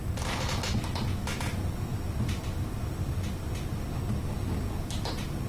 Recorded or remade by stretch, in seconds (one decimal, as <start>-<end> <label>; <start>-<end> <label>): 0.0-5.5 recorded